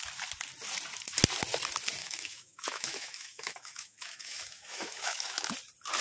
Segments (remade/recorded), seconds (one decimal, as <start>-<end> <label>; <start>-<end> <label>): 0.0-2.0 recorded; 2.0-5.5 remade; 5.5-6.0 recorded